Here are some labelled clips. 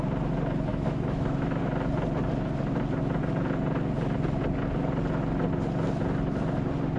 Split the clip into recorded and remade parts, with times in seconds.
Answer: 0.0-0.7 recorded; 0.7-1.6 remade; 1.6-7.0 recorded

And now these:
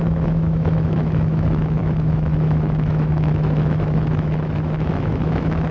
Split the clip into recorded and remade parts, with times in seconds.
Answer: 0.0-5.7 remade

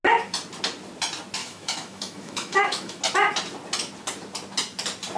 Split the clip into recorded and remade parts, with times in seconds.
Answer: 0.0-1.4 recorded; 1.4-3.0 remade; 3.0-5.2 recorded